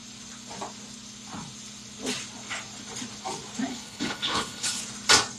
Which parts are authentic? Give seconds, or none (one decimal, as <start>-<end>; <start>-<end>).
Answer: 0.0-3.7; 4.8-5.4